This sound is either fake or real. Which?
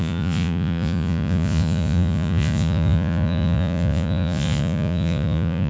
fake